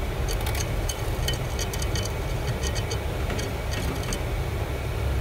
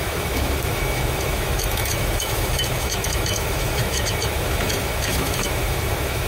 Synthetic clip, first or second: second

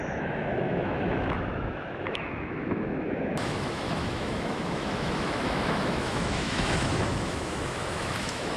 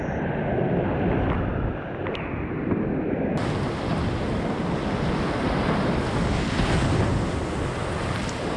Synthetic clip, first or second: first